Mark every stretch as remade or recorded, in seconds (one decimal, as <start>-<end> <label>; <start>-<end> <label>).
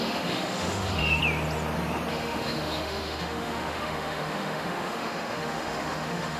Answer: 0.0-1.2 remade; 1.2-2.1 recorded; 2.1-6.4 remade